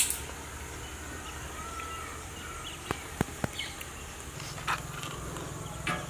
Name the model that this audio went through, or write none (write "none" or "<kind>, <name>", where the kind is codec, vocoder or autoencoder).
none